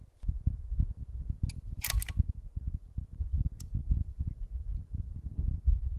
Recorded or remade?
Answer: recorded